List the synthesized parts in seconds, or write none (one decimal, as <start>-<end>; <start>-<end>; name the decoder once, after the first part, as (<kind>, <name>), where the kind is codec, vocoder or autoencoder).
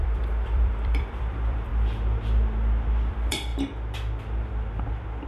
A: 0.0-1.7 (vocoder, BigVGAN v2); 3.1-3.5